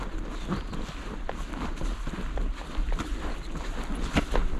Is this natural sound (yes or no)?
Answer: no